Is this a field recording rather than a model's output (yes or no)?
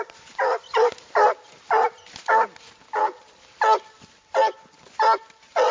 yes